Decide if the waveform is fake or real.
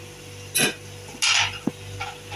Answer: real